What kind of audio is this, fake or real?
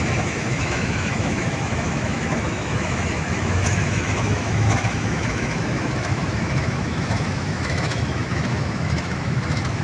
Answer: fake